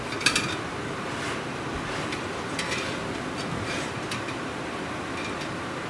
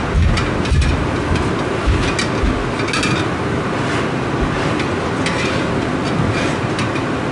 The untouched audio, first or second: second